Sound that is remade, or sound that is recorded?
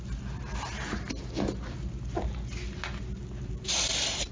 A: recorded